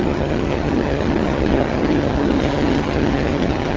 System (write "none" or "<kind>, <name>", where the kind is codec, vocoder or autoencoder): vocoder, HiFi-GAN